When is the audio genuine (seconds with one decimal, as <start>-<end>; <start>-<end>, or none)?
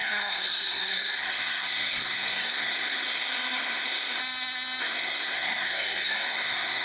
4.2-4.8